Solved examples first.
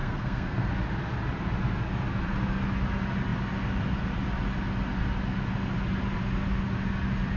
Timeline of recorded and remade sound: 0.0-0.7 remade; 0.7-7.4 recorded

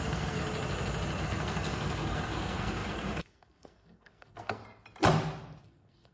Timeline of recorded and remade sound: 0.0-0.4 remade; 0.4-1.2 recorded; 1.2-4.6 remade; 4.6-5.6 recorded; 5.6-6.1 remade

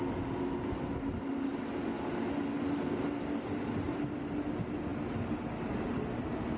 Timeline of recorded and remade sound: 0.0-6.6 recorded